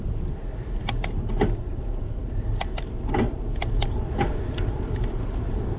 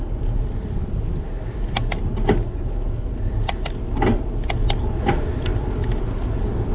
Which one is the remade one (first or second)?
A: first